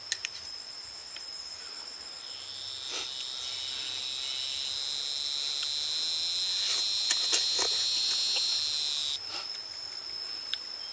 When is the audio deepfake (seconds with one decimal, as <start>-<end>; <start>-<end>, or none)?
none